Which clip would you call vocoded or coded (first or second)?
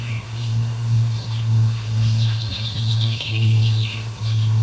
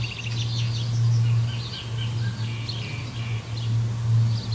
first